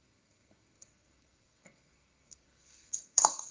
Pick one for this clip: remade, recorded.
remade